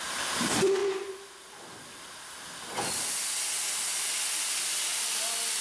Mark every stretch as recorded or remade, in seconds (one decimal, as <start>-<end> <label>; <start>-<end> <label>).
0.0-5.6 recorded